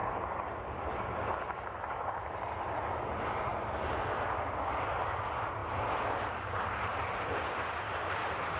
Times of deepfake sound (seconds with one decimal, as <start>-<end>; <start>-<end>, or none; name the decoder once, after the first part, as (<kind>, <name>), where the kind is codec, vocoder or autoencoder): none

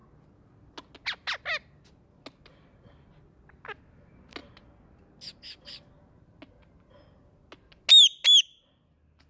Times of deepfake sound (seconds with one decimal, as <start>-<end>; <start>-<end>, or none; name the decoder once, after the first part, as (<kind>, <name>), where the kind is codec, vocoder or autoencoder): none

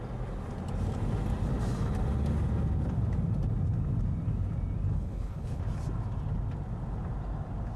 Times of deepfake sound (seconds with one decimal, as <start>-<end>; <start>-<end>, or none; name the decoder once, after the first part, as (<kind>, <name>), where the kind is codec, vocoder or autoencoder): 4.9-5.6 (codec, HILCodec)

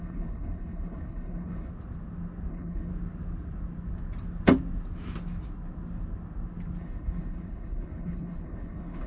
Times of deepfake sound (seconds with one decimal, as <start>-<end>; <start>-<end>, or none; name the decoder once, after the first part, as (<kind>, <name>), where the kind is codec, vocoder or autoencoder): 0.0-1.7 (codec, HILCodec); 2.5-2.9; 6.8-9.1